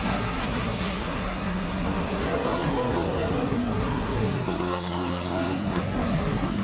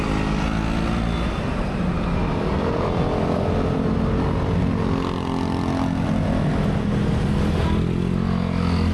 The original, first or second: second